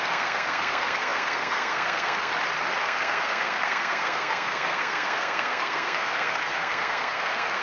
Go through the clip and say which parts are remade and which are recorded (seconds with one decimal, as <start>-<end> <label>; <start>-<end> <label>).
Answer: 0.0-2.3 remade; 2.3-2.8 recorded; 2.8-7.6 remade